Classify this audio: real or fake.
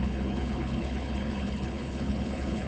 fake